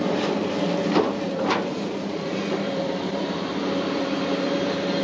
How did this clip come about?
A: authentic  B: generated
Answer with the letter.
B